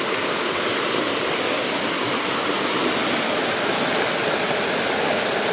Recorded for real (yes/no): yes